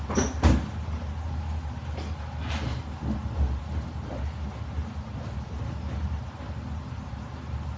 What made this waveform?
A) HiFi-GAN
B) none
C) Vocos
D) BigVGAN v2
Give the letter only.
B